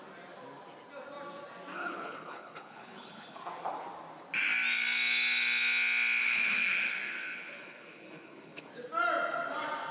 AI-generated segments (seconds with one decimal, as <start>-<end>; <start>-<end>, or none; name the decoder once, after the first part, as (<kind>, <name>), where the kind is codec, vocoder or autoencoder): 1.7-3.4 (codec, HILCodec); 6.2-8.7